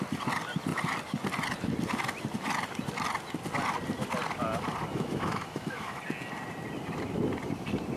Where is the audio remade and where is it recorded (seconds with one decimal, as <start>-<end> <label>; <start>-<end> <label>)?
0.0-4.9 recorded; 4.9-6.0 remade; 6.0-8.0 recorded